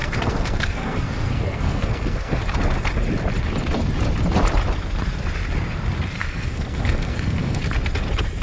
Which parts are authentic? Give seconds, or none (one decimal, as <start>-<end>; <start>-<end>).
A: 2.4-6.2; 7.6-8.4